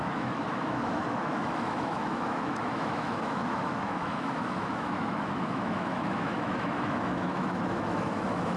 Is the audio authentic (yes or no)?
no